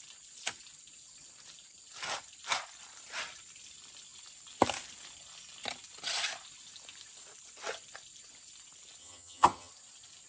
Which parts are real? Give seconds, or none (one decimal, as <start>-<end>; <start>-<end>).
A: 0.0-9.0; 9.7-10.3